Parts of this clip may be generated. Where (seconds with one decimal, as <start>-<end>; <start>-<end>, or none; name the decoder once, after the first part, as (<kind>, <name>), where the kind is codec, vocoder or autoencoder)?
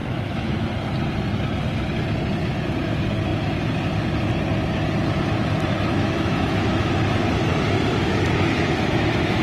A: 0.0-0.7 (autoencoder, DAC-VAE); 5.9-6.9; 7.9-9.4